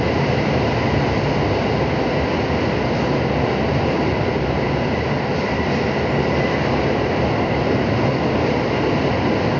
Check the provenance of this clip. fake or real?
real